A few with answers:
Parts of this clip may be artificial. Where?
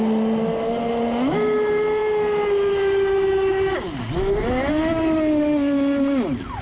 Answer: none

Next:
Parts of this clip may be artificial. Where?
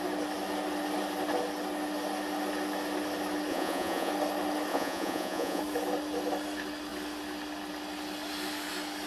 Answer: 3.5-4.1 (vocoder, Vocos); 4.7-5.6